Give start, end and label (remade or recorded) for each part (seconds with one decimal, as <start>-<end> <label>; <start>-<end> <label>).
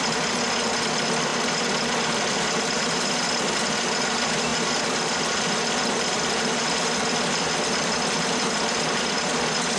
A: 0.0-1.3 remade; 1.3-2.0 recorded; 2.0-9.8 remade